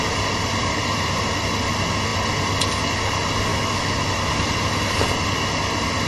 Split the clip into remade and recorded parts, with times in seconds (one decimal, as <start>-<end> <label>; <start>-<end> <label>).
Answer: 0.0-3.5 recorded; 3.5-4.3 remade; 4.3-6.1 recorded